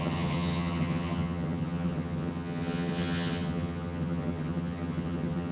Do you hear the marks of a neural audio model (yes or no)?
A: yes